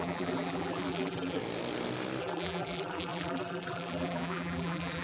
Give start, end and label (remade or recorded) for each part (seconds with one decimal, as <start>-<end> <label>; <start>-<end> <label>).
0.0-1.4 remade; 1.4-2.2 recorded; 2.2-5.0 remade